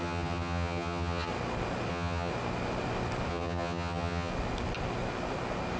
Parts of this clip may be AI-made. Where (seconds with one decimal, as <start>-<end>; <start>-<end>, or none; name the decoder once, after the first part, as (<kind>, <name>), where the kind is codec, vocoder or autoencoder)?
0.0-1.3 (vocoder, HiFi-GAN); 1.9-2.3; 3.3-4.3